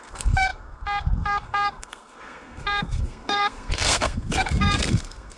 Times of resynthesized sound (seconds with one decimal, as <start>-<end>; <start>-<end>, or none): 0.0-5.4